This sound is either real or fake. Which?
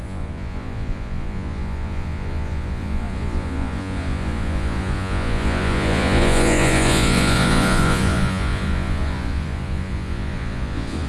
fake